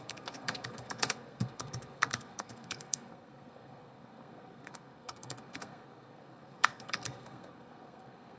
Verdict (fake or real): fake